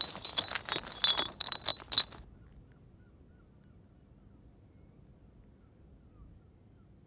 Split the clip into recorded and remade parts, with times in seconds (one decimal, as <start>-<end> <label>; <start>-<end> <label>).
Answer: 0.0-7.1 recorded